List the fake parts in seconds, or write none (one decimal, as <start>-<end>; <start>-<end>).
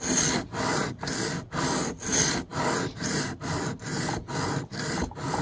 none